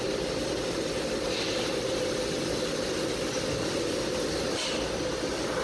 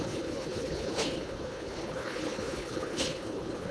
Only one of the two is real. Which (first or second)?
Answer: first